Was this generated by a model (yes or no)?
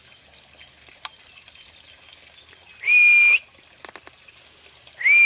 no